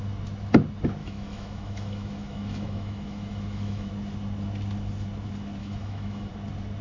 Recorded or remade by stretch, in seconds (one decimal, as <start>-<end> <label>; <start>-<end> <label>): 0.0-1.0 recorded; 1.0-3.9 remade; 3.9-5.6 recorded; 5.6-6.3 remade; 6.3-6.8 recorded